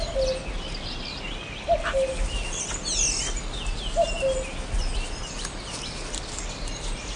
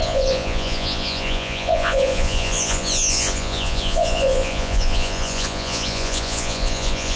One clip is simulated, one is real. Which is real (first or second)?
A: first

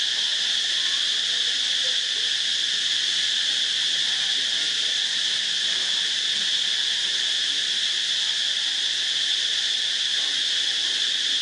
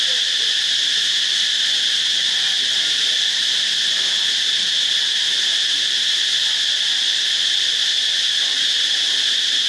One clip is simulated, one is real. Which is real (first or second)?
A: first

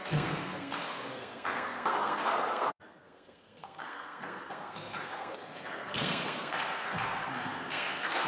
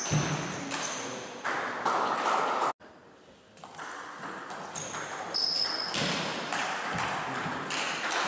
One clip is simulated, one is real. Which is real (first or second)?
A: second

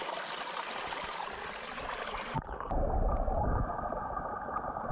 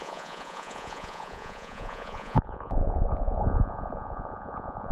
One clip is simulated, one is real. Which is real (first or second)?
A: first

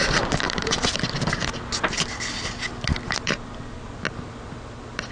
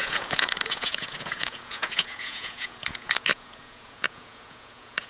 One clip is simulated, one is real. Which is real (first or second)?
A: first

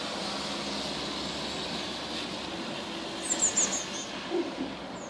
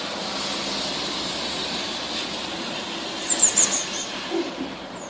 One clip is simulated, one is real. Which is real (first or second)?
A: first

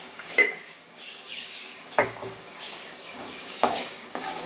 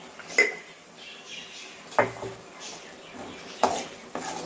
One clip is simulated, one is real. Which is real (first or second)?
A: second